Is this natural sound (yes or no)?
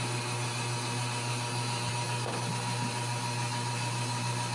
yes